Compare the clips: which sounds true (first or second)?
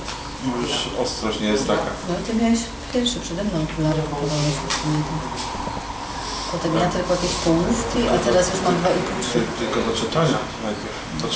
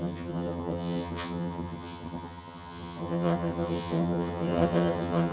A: first